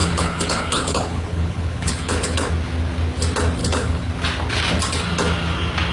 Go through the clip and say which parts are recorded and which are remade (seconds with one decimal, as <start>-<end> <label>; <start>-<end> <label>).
0.0-2.5 remade; 2.5-3.6 recorded; 3.6-4.1 remade; 4.1-5.9 recorded